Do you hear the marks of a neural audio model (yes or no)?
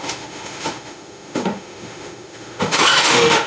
yes